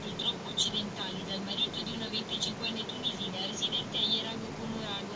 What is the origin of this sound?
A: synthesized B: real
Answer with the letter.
B